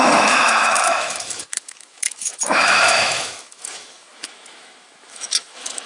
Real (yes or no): no